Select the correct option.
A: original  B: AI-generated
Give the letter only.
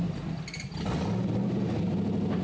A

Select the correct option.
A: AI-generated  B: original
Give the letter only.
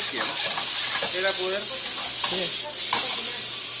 B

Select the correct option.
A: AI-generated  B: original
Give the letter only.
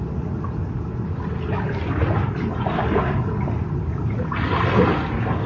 B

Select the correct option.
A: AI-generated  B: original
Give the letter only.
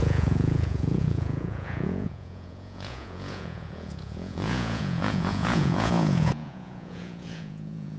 A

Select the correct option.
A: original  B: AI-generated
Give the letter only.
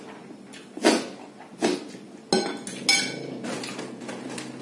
A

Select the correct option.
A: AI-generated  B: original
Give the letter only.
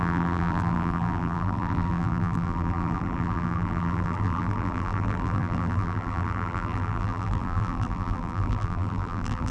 A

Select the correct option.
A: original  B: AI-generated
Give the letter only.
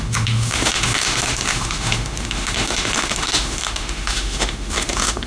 B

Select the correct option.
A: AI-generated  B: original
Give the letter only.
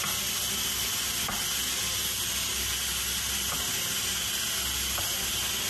B